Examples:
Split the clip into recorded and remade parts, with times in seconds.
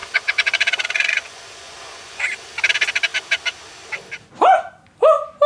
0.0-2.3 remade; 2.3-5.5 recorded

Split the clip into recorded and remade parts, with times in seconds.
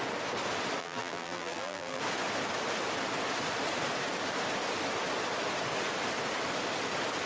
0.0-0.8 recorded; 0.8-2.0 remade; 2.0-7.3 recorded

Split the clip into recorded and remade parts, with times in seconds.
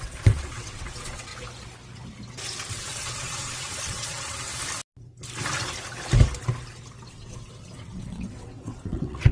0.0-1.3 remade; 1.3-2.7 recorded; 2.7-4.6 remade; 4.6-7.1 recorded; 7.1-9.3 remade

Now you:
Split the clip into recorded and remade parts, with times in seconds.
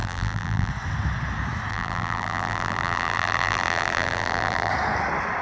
0.0-0.7 remade; 0.7-1.7 recorded; 1.7-4.7 remade; 4.7-5.4 recorded